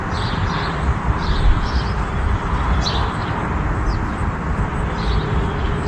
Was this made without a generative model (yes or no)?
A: no